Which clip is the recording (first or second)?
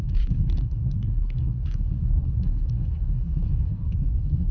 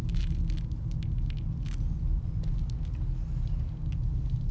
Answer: second